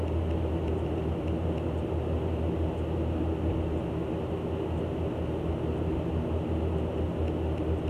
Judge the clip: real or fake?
real